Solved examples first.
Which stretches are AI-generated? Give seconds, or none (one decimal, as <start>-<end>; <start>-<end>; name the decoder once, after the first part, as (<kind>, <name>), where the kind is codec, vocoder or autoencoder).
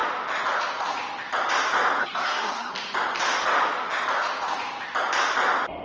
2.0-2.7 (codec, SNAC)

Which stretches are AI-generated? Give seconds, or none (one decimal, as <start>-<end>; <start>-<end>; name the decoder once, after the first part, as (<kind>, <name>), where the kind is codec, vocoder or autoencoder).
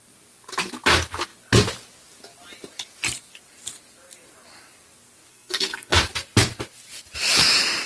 5.3-6.0 (codec, SNAC)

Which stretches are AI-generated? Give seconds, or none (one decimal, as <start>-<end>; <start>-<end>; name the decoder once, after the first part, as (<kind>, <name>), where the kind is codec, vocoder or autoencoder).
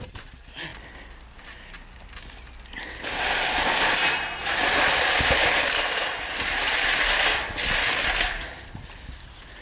none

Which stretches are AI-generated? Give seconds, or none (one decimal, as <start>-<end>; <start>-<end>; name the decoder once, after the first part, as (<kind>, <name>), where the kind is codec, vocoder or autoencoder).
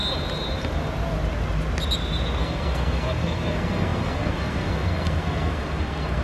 2.4-6.2 (codec, SNAC)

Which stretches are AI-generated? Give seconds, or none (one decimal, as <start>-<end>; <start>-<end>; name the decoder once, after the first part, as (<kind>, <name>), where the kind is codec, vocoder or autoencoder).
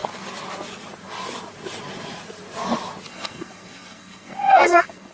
3.1-5.1 (codec, SNAC)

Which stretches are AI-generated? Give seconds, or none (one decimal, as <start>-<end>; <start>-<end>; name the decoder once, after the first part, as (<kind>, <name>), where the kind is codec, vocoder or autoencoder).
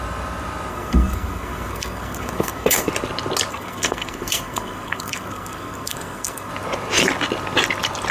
0.7-2.9 (codec, SNAC); 3.5-6.5